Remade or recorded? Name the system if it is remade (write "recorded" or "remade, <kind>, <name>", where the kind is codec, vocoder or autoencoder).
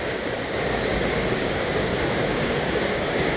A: remade, codec, DAC